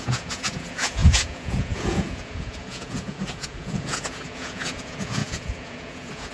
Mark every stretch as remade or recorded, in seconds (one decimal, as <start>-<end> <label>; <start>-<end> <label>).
0.0-6.3 remade